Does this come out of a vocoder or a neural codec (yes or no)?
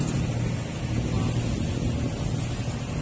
no